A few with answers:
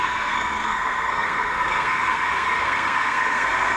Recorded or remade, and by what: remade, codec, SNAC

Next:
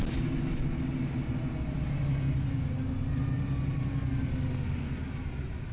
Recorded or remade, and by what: recorded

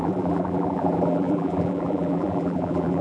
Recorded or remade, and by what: remade, vocoder, BigVGAN v2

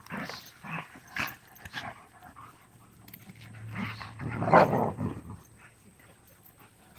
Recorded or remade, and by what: recorded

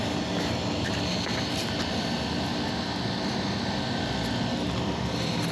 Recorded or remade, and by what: recorded